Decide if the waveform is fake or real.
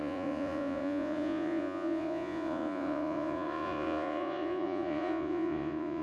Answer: fake